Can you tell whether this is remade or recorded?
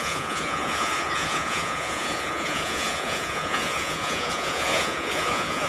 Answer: remade